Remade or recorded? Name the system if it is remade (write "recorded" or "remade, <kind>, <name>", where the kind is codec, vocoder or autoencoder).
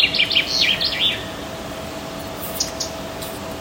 recorded